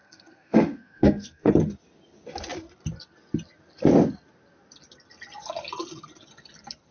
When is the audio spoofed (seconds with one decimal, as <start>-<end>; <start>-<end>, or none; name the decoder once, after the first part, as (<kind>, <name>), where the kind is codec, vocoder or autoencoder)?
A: 0.0-1.5 (codec, SNAC)